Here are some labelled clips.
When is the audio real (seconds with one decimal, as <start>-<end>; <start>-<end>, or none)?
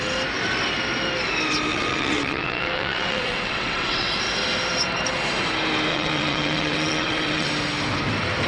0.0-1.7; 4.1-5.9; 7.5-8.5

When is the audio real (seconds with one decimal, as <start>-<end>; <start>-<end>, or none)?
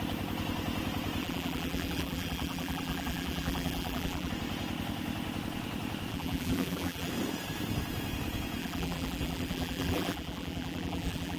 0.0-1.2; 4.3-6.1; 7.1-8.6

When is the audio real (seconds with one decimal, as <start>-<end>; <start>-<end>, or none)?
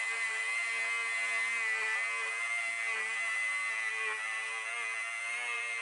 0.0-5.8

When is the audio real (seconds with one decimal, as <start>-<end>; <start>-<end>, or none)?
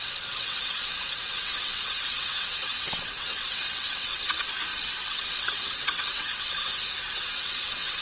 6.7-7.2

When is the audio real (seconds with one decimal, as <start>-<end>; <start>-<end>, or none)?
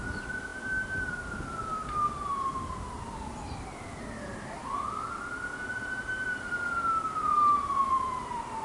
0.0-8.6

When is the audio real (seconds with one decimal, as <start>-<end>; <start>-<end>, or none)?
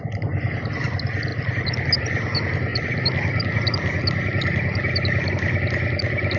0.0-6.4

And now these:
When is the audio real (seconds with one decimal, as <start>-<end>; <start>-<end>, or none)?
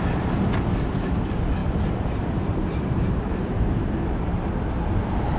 0.0-1.6; 4.0-5.4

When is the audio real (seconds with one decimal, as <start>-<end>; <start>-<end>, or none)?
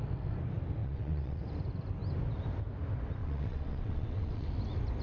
0.0-0.8; 1.4-3.2; 4.5-5.0